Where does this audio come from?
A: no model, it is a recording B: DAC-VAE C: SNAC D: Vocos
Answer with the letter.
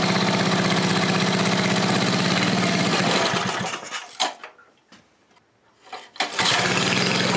A